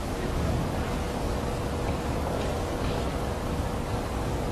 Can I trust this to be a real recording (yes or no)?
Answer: no